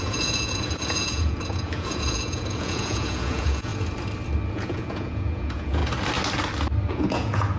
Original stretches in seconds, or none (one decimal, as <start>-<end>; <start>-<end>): 3.7-4.5; 5.8-6.9